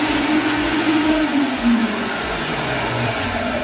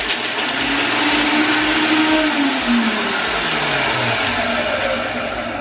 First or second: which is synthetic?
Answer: first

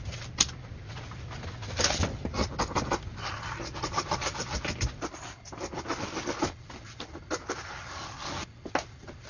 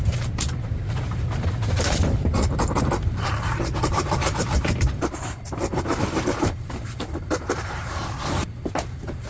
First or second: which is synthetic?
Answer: second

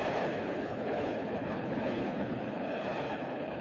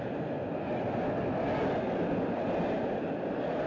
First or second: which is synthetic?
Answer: first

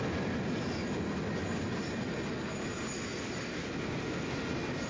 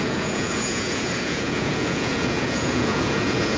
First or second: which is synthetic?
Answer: second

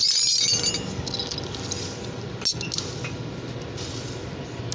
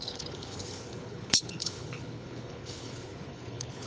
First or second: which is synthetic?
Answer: second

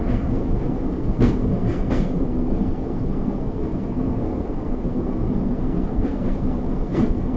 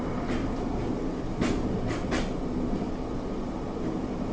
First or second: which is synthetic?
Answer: first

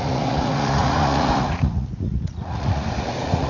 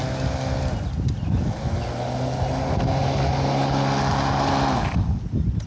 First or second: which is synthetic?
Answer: first